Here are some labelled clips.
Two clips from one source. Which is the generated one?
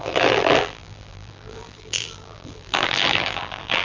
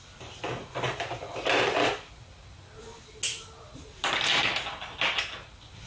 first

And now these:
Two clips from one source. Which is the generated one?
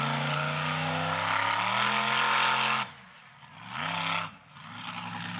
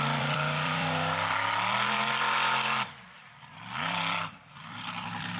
second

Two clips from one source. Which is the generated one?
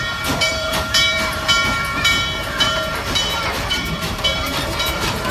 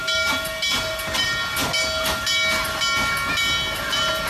first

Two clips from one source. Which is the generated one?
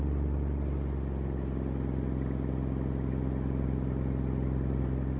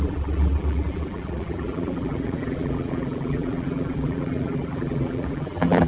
second